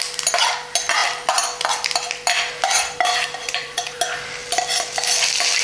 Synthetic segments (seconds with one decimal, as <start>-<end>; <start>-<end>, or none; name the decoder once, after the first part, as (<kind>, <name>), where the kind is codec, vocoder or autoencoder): 3.4-4.0 (vocoder, Vocos)